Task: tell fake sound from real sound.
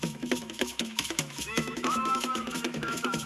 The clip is fake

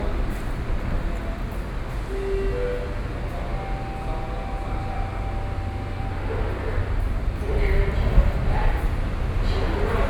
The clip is real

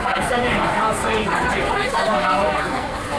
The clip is fake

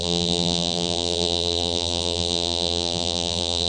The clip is fake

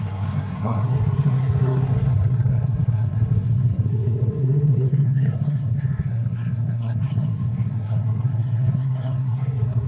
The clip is fake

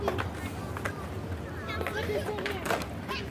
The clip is real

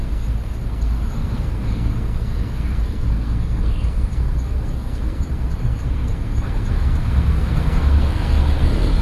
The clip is fake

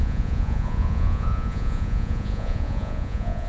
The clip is fake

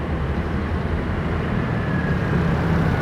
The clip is real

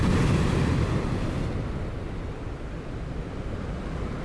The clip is real